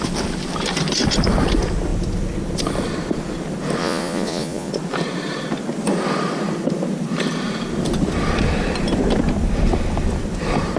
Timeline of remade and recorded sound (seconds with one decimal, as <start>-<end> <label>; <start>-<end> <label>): 0.0-3.8 recorded; 3.8-4.7 remade; 4.7-10.8 recorded